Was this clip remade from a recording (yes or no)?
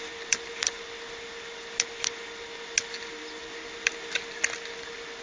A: no